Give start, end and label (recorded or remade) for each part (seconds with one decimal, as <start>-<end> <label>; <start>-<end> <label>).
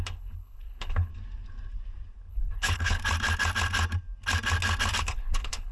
0.0-1.1 remade; 1.1-2.3 recorded; 2.3-3.0 remade; 3.0-5.0 recorded; 5.0-5.7 remade